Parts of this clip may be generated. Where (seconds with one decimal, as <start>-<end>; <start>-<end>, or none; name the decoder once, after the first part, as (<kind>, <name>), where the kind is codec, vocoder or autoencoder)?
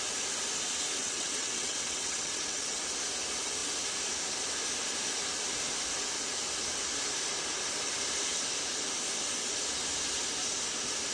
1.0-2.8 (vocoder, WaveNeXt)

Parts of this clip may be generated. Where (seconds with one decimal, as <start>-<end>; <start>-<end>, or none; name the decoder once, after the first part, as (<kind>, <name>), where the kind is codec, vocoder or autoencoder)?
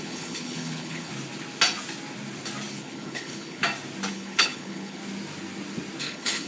0.0-1.1 (codec, HILCodec); 2.7-3.6; 4.1-5.0; 6.0-6.5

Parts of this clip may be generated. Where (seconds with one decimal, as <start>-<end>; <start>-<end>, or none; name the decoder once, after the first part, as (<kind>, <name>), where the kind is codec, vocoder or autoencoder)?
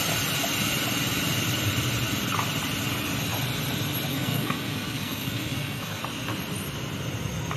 4.1-6.0 (codec, SNAC)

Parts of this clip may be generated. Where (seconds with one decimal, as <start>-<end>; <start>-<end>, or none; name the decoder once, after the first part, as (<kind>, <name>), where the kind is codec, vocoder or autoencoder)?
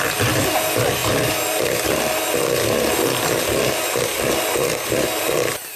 none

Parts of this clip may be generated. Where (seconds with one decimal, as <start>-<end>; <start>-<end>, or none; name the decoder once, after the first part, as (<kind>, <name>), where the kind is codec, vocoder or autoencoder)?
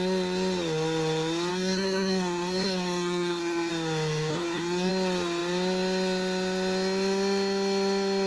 1.5-3.7 (codec, SNAC); 4.3-4.9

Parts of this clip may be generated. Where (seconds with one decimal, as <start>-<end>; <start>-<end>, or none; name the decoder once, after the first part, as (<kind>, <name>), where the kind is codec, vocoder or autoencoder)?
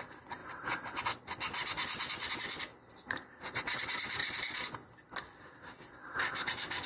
2.7-3.8 (vocoder, BigVGAN v2)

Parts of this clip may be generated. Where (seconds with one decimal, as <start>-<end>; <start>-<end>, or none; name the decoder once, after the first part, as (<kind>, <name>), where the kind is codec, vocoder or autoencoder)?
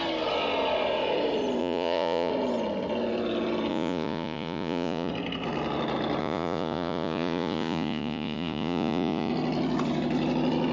1.6-2.3 (vocoder, Vocos); 3.7-5.1; 6.2-9.3